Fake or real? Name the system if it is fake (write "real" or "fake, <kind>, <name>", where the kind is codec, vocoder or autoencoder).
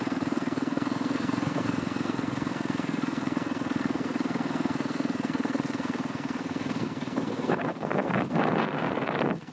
fake, codec, SNAC